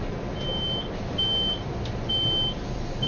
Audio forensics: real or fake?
real